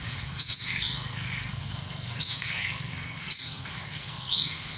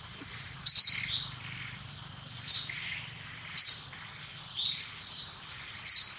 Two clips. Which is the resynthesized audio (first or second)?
first